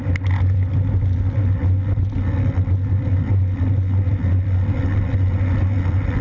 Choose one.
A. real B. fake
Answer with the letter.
A